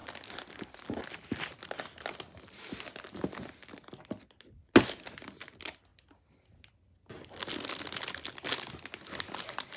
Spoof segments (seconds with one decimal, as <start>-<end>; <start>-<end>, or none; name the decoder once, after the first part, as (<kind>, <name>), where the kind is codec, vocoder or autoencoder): none